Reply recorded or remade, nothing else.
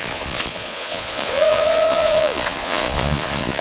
remade